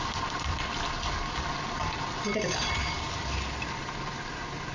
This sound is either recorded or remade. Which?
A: recorded